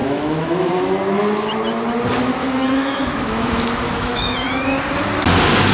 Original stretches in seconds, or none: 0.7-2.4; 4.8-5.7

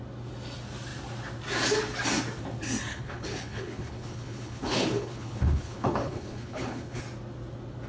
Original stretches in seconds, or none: 0.0-2.9; 7.0-7.9

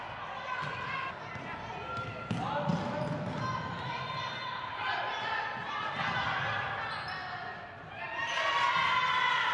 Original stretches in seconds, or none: 0.0-9.5